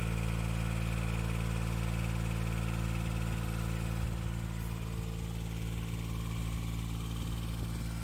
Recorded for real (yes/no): yes